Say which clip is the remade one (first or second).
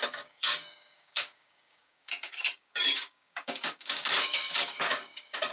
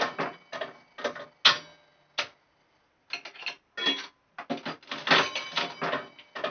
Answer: first